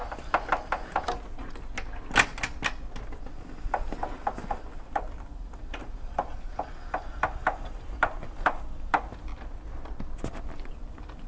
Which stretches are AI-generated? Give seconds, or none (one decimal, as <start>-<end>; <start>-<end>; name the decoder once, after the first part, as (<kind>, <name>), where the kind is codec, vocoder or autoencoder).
3.3-9.3 (vocoder, BigVGAN v2); 10.3-11.3